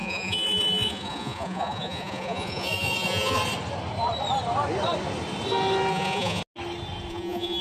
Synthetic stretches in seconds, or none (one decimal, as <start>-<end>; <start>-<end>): 0.0-3.4; 5.9-6.4; 7.1-7.6